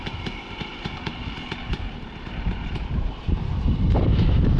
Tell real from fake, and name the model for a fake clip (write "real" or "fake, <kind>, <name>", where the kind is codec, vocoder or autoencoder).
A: fake, vocoder, BigVGAN v2